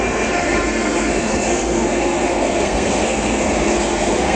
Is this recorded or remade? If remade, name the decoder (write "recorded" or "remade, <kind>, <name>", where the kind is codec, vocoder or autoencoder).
remade, codec, SNAC